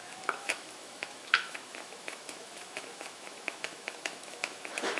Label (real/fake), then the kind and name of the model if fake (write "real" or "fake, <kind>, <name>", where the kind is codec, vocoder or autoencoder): fake, autoencoder, DAC-VAE